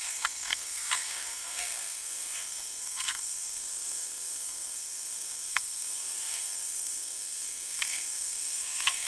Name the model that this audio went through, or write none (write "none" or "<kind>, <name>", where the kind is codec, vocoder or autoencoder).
codec, SNAC